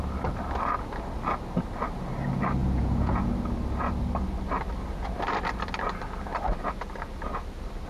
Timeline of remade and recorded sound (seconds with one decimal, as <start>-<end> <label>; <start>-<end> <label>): 0.0-2.6 recorded; 2.6-3.3 remade; 3.3-7.9 recorded